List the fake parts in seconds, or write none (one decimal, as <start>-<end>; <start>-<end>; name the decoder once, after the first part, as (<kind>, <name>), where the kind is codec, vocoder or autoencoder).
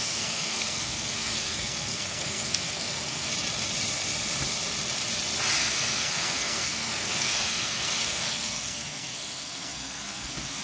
0.0-3.3 (codec, SNAC); 5.6-10.6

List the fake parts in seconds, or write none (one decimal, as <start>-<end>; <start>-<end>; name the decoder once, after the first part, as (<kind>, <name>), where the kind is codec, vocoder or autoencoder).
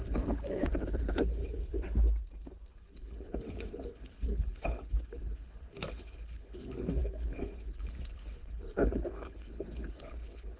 0.0-1.4 (codec, HILCodec); 2.7-10.6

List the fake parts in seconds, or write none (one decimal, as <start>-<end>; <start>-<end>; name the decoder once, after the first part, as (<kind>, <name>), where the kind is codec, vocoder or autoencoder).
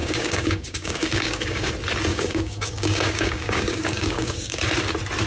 0.0-1.7 (codec, DAC); 2.1-4.6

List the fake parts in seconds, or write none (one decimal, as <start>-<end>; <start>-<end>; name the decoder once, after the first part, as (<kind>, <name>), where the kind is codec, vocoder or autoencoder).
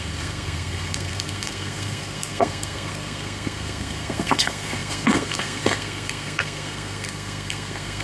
0.0-8.0 (codec, SNAC)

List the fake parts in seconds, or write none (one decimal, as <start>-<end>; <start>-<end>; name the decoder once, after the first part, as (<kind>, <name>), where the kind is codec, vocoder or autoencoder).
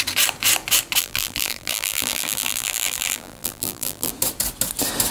1.0-4.1 (vocoder, BigVGAN v2)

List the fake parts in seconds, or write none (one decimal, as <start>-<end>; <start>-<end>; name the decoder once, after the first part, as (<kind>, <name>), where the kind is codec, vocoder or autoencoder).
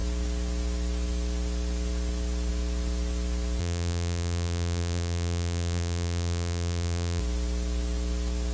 3.6-7.2 (vocoder, BigVGAN v2)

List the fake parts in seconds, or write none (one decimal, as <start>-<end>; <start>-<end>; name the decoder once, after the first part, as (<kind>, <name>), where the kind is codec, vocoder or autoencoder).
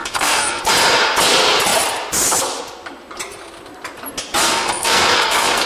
0.0-0.6 (codec, SNAC); 4.4-5.7